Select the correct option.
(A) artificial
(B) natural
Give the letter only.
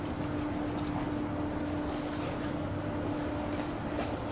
B